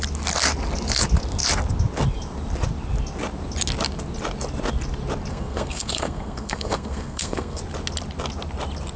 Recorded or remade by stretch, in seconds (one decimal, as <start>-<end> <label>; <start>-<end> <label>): 0.0-5.3 recorded; 5.3-7.6 remade; 7.6-9.0 recorded